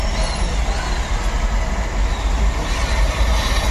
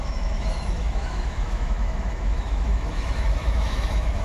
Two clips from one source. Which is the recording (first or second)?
first